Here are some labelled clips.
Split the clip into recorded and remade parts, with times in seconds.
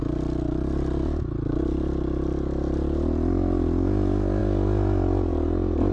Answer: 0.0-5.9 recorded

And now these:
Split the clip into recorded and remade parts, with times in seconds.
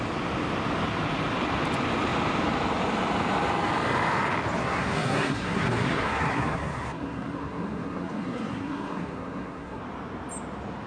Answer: 0.0-4.6 recorded; 4.6-9.8 remade; 9.8-10.9 recorded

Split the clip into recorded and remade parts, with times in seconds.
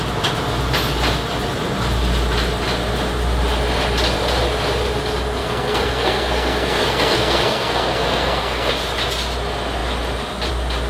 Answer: 0.0-5.4 recorded; 5.4-8.7 remade; 8.7-10.9 recorded